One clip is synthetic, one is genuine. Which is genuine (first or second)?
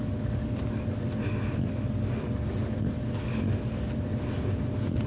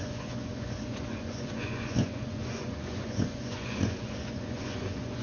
first